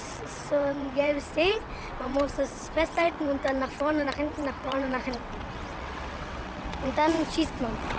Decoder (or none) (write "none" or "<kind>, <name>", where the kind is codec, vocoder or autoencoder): vocoder, WaveNeXt